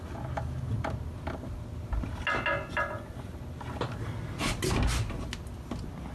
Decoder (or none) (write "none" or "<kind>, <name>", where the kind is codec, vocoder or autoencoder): none